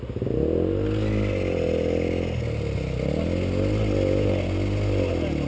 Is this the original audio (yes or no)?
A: yes